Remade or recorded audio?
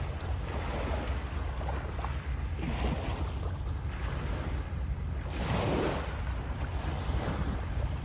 recorded